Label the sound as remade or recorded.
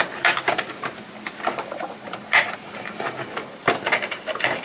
recorded